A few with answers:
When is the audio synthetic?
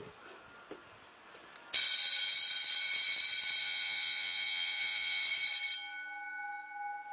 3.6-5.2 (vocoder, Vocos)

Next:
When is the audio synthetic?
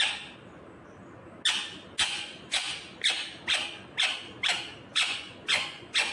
2.0-2.8 (vocoder, Vocos); 4.9-6.1